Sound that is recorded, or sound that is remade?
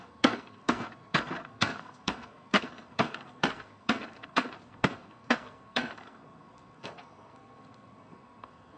remade